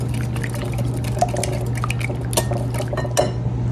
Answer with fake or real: real